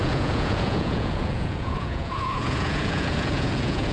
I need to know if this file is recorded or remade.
remade